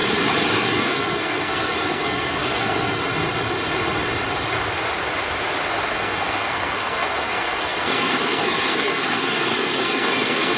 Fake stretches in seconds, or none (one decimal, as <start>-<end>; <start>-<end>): 0.8-3.0; 5.9-10.6